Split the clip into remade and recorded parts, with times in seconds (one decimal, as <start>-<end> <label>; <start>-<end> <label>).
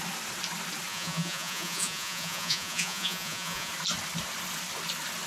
0.0-0.9 recorded; 0.9-3.7 remade; 3.7-5.3 recorded